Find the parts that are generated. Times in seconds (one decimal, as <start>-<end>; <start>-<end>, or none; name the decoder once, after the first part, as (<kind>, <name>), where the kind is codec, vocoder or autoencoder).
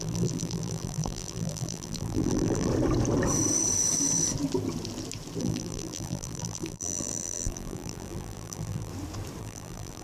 0.0-2.7 (vocoder, BigVGAN v2); 5.4-8.9; 9.4-10.0